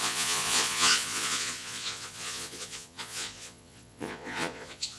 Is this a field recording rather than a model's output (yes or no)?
no